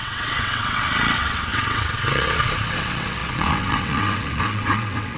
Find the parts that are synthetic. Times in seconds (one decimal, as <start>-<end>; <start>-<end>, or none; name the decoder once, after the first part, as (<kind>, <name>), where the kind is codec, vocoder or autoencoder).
0.0-5.2 (vocoder, WaveNeXt)